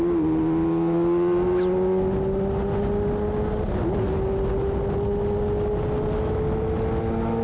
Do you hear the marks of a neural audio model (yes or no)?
no